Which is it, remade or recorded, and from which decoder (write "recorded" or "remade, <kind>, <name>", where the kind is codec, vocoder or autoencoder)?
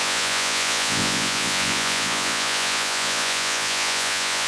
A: remade, vocoder, Vocos